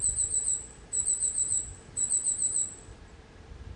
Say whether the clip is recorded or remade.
recorded